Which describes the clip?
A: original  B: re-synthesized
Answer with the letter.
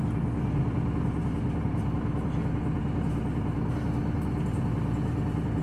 A